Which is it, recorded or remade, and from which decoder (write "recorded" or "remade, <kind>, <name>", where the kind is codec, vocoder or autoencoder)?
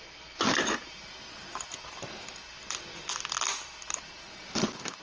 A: recorded